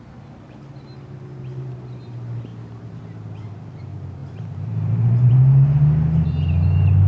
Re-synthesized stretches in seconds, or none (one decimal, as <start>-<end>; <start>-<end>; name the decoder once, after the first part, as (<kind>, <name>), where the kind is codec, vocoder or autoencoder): none